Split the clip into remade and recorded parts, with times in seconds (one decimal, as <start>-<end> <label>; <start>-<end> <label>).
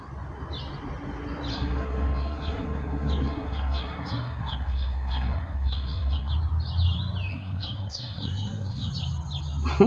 0.0-1.5 recorded; 1.5-6.3 remade; 6.3-7.3 recorded; 7.3-8.9 remade; 8.9-9.9 recorded